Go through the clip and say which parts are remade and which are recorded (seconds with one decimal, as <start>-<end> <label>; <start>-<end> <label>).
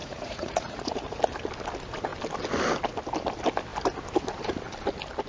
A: 0.0-1.2 remade; 1.2-5.3 recorded